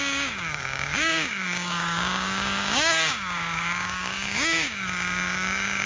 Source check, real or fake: fake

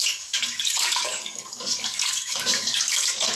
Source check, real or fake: fake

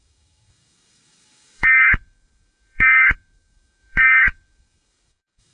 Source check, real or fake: fake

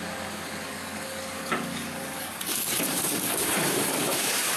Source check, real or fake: fake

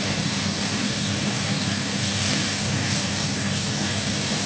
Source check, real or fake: fake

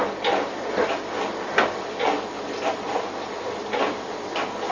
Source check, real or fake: real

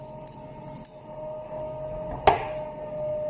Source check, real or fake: real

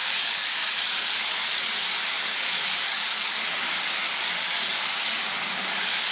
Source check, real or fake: fake